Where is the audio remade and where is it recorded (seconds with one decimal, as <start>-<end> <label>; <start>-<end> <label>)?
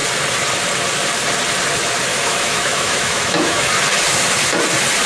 0.0-2.1 recorded; 2.1-3.7 remade; 3.7-5.1 recorded